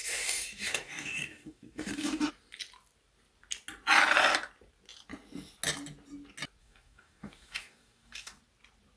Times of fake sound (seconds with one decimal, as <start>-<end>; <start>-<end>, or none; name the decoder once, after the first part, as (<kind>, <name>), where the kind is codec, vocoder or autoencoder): 0.0-2.3 (codec, DAC); 6.6-8.4